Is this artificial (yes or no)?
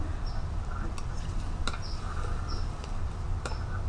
no